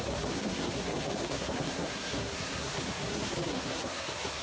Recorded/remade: remade